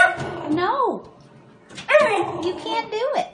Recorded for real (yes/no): yes